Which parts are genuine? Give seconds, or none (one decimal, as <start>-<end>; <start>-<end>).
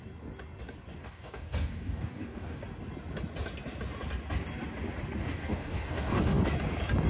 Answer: 0.0-1.0; 2.6-5.2; 6.4-7.1